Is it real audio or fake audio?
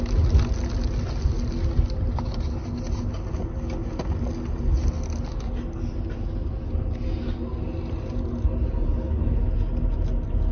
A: real